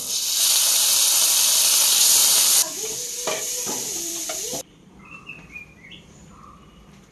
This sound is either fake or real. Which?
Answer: fake